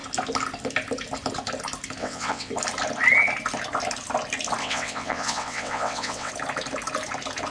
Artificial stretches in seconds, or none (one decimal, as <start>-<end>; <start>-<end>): 2.0-2.5; 4.6-6.3